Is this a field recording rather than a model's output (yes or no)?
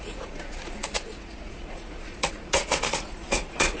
no